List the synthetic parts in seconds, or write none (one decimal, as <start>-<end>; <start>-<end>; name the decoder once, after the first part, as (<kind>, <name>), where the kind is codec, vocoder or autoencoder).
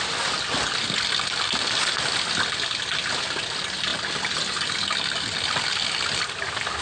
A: none